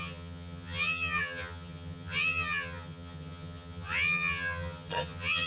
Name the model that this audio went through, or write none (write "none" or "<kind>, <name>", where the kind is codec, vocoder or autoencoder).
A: vocoder, HiFi-GAN